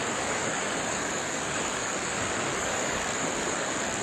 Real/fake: fake